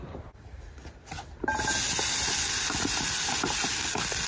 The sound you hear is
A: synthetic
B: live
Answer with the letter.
B